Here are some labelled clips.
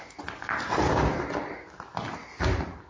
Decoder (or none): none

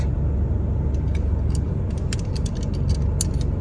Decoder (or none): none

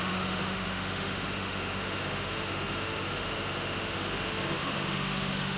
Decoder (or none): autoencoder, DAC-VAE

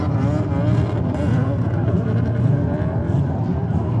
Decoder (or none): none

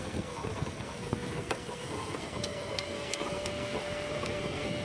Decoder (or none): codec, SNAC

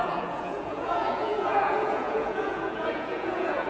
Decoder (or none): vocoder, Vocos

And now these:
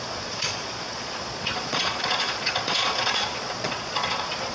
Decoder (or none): vocoder, Vocos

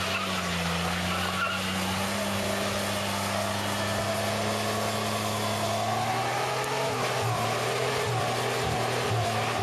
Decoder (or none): none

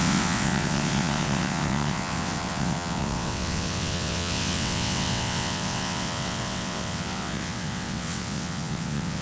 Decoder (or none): vocoder, WaveNeXt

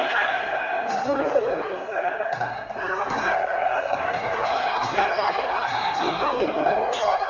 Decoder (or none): codec, SNAC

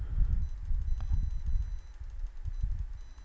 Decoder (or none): none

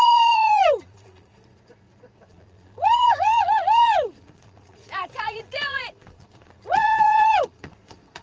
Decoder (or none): vocoder, Vocos